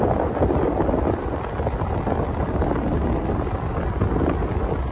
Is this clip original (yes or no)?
yes